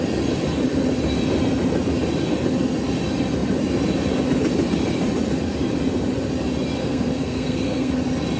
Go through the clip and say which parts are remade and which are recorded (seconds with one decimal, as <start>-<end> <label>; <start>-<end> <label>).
0.0-6.8 recorded; 6.8-7.9 remade; 7.9-8.4 recorded